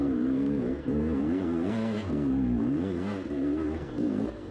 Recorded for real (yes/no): no